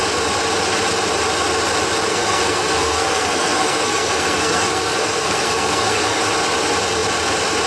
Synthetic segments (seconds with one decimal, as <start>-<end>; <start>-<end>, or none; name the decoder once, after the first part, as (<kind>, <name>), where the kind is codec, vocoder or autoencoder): 2.1-6.2 (codec, SNAC)